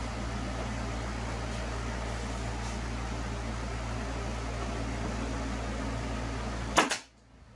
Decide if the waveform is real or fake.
real